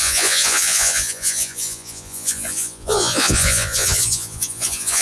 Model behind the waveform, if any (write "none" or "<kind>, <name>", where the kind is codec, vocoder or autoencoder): vocoder, Vocos